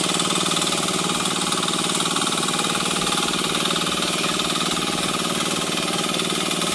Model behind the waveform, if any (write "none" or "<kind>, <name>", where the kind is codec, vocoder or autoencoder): none